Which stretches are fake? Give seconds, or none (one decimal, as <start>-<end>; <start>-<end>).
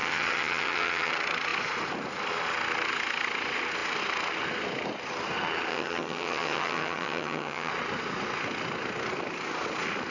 0.0-1.1; 5.7-7.7